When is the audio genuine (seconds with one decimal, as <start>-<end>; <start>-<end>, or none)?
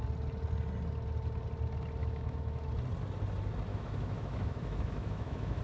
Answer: 0.0-2.0; 2.7-3.7